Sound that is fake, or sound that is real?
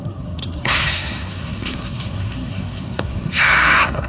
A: fake